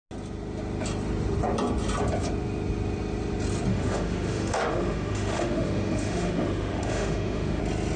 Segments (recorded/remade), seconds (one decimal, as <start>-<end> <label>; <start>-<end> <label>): 0.0-3.7 recorded; 3.7-7.6 remade; 7.6-8.0 recorded